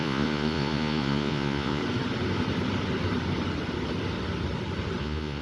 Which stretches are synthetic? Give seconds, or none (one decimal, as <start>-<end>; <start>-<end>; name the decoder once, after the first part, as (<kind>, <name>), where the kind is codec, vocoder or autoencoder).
0.0-1.8 (vocoder, Vocos); 5.0-5.4